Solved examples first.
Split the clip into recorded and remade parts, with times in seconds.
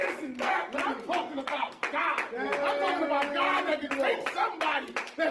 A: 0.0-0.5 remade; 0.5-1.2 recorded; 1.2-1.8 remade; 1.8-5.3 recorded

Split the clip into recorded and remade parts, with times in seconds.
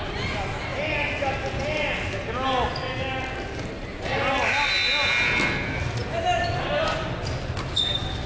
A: 0.0-8.3 recorded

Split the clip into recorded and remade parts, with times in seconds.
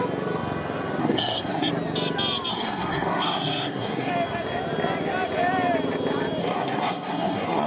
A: 0.0-1.0 recorded; 1.0-1.7 remade; 1.7-2.5 recorded; 2.5-4.1 remade; 4.1-6.4 recorded; 6.4-7.7 remade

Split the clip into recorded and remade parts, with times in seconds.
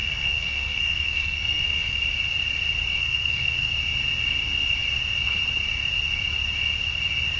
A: 0.0-2.0 remade; 2.0-3.0 recorded; 3.0-3.7 remade; 3.7-7.4 recorded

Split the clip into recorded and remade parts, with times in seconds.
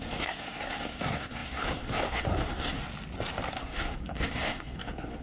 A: 0.0-2.8 remade; 2.8-3.6 recorded; 3.6-5.2 remade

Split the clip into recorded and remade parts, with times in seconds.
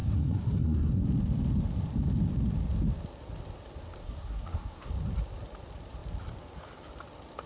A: 0.0-1.0 remade; 1.0-4.0 recorded; 4.0-4.9 remade; 4.9-7.5 recorded